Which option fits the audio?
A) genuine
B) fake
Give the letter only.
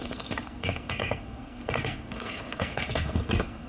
B